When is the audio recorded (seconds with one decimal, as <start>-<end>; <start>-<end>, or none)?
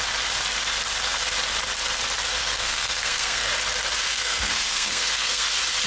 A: 0.0-2.4; 3.5-4.1; 5.5-5.9